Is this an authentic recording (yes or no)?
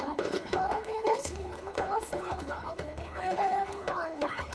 no